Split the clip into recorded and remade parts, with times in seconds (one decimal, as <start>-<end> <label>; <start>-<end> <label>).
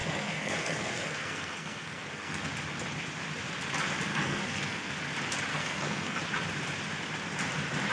0.0-2.5 remade; 2.5-4.1 recorded; 4.1-4.9 remade; 4.9-5.5 recorded; 5.5-6.2 remade; 6.2-7.9 recorded